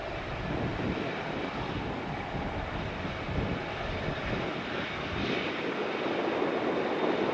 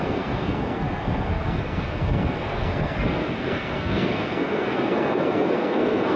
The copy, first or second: second